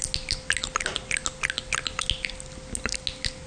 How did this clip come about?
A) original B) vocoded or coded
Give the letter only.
A